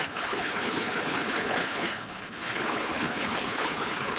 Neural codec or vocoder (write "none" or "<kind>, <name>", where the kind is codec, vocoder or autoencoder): codec, HILCodec